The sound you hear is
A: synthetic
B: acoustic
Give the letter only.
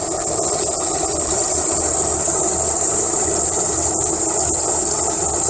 B